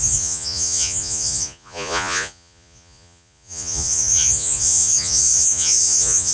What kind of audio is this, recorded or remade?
remade